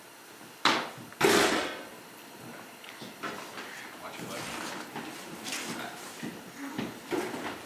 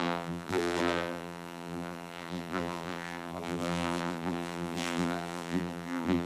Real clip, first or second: first